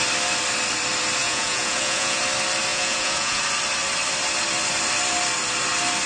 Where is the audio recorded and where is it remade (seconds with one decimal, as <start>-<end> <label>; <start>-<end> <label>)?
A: 0.0-1.2 recorded; 1.2-2.2 remade; 2.2-2.7 recorded; 2.7-3.4 remade; 3.4-6.1 recorded